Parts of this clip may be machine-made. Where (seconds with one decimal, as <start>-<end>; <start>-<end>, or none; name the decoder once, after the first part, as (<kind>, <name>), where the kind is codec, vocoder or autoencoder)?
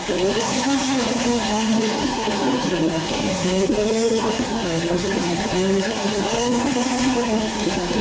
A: 0.0-8.0 (codec, SNAC)